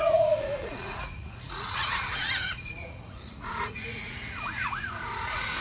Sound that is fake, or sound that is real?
fake